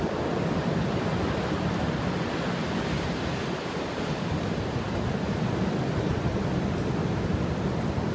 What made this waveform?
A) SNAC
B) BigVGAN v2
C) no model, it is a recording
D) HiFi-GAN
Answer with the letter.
C